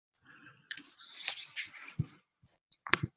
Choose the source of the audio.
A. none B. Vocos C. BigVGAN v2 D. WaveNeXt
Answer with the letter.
B